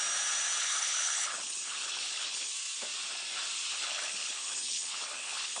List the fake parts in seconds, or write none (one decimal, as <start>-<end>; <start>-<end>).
0.6-2.5; 3.7-5.6